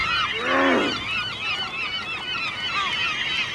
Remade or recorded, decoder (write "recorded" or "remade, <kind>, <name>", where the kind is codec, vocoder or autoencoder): recorded